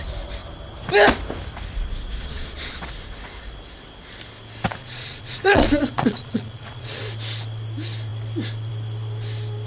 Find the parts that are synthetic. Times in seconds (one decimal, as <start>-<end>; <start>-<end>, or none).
2.2-2.9; 4.8-7.0